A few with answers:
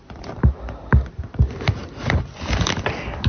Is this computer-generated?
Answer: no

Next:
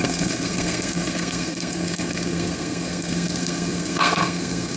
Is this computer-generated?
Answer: yes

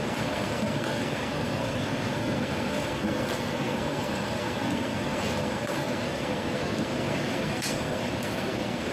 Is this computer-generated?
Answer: yes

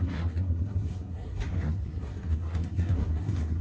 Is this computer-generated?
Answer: yes